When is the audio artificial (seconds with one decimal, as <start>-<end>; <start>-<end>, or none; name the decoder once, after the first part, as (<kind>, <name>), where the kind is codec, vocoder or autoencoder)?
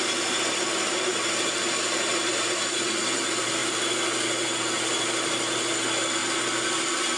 0.0-1.1 (vocoder, BigVGAN v2); 1.7-3.6; 4.7-6.2; 6.8-7.2